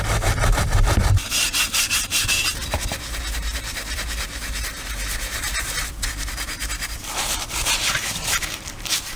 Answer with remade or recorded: remade